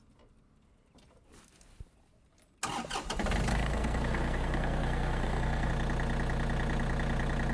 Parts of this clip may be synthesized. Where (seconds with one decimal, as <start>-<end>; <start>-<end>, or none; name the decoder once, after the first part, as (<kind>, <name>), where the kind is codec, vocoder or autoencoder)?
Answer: 3.5-5.7 (codec, SNAC)